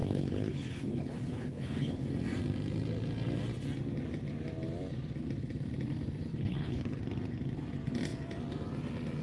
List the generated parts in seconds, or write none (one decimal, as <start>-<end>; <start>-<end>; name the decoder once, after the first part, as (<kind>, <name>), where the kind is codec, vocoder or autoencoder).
0.0-2.0 (codec, HILCodec); 6.3-7.0